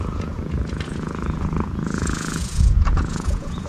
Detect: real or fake fake